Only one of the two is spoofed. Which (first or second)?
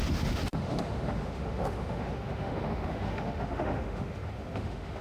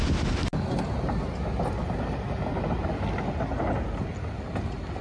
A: first